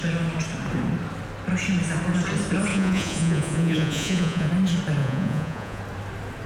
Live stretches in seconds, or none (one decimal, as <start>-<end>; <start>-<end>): 0.0-2.7; 4.5-5.0; 5.8-6.5